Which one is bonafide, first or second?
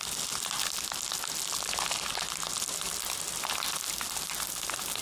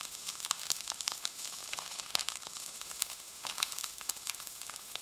first